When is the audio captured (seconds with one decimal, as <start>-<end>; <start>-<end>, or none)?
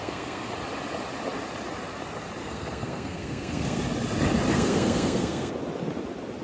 0.5-2.4; 3.8-4.5; 5.5-6.4